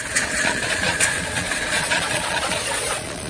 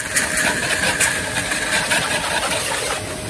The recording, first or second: second